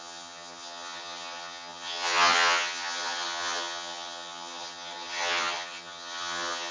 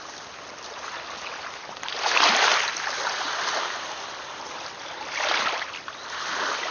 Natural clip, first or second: second